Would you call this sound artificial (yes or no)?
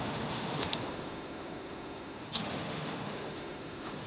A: yes